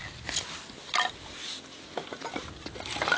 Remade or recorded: recorded